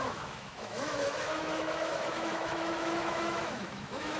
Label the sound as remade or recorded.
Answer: remade